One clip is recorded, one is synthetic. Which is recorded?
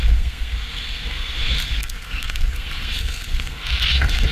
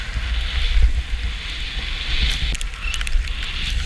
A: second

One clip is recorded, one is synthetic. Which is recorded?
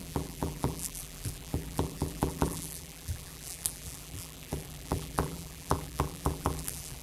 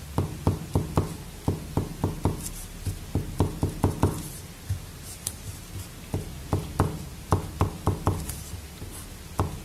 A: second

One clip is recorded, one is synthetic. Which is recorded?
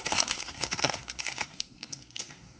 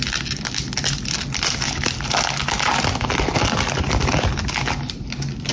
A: second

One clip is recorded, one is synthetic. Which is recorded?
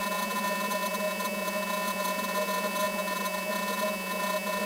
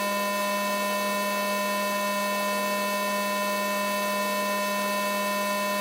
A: second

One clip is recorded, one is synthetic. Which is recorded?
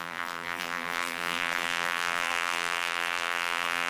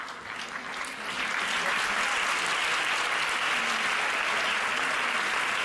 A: second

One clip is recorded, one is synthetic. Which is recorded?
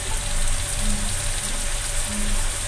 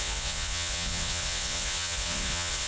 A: first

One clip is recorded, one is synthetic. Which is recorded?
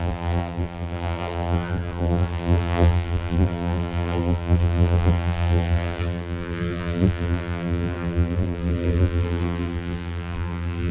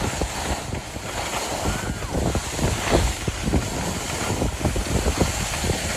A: second